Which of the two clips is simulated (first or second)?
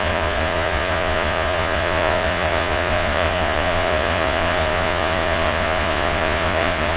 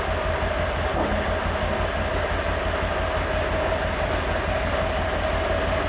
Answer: first